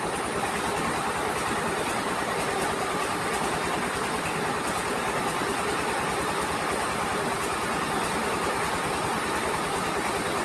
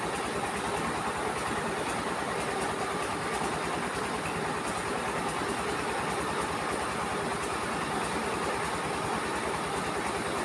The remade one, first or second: first